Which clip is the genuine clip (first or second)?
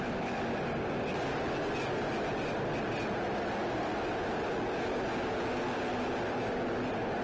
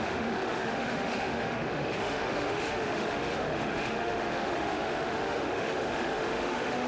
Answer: first